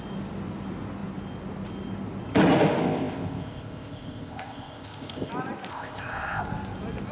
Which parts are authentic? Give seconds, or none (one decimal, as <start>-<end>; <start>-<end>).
0.0-2.8; 5.3-5.7; 6.4-7.1